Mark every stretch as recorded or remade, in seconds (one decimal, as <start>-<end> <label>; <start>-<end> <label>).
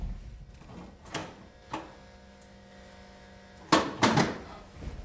0.0-5.0 recorded